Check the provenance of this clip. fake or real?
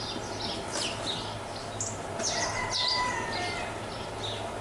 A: real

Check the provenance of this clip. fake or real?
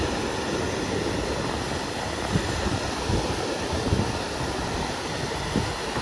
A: real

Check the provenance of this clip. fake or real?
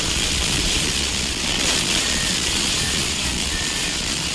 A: fake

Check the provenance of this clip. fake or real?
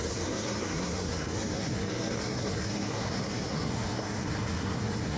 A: fake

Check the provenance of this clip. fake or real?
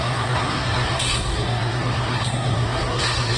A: fake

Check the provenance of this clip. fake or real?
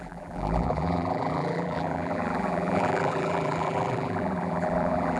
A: fake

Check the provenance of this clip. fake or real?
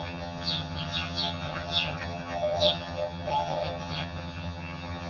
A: fake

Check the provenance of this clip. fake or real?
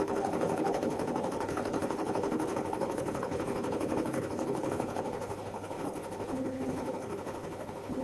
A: fake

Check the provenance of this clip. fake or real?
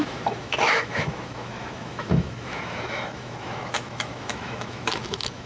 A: fake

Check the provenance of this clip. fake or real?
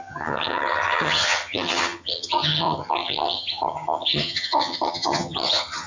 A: fake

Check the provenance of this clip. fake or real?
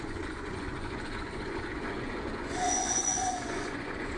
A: fake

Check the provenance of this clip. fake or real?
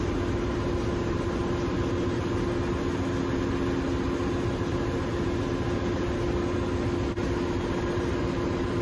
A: real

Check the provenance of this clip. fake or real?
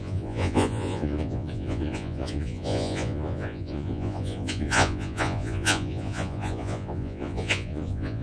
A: fake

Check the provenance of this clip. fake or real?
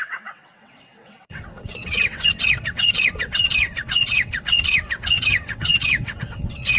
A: fake